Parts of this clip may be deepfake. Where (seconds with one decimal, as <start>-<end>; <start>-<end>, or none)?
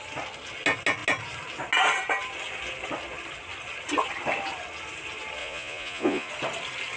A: 5.4-6.3